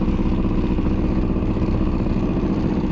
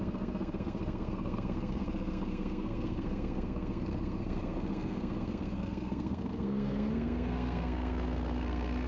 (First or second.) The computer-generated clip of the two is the second